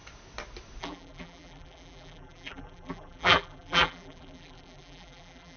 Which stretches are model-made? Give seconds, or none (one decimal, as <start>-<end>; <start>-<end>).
0.8-5.6